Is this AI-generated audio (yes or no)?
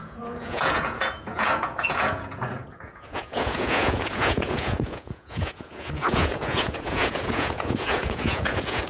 yes